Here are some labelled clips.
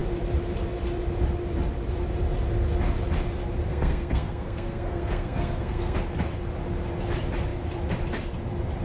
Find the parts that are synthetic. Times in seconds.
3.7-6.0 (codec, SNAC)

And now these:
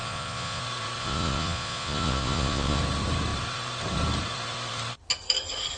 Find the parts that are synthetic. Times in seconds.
0.0-0.6 (vocoder, Vocos); 1.0-2.8

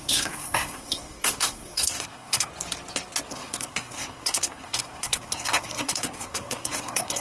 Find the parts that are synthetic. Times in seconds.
0.0-2.5 (codec, SNAC); 3.3-7.2

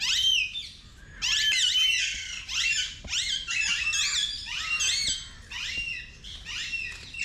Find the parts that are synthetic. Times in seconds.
none

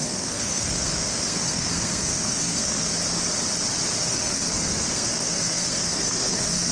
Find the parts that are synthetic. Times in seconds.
0.0-2.9 (codec, SNAC); 4.1-6.7

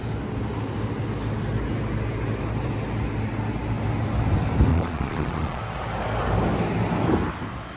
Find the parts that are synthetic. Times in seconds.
4.7-5.6 (vocoder, Vocos)

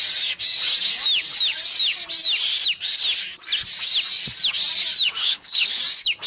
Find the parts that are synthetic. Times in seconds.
5.2-5.8 (codec, HILCodec)

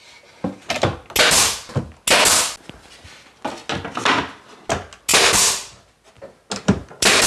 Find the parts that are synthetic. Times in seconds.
none